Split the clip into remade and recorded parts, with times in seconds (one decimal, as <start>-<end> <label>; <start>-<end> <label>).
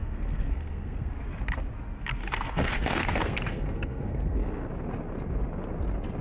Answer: 0.0-1.1 remade; 1.1-2.2 recorded; 2.2-4.7 remade; 4.7-6.2 recorded